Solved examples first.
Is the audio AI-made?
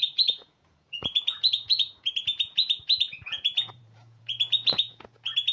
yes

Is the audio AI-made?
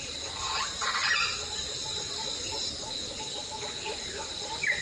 no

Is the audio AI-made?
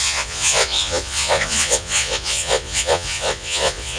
yes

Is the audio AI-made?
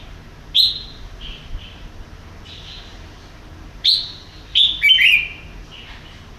no